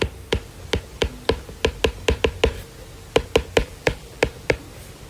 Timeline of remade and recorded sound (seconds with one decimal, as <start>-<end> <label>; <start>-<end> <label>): 0.0-3.6 recorded; 3.6-4.2 remade; 4.2-5.1 recorded